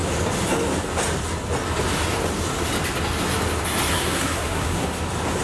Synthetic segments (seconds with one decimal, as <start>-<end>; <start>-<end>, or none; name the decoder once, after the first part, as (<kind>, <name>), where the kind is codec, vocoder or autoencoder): 3.9-5.0 (codec, SNAC)